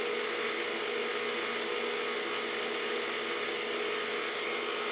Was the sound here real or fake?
real